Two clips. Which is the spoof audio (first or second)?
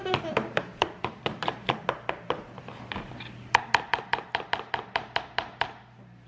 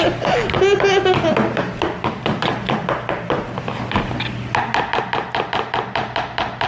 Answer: first